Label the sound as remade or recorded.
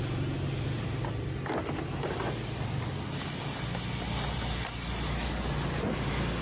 recorded